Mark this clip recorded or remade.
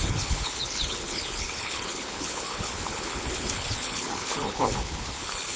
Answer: remade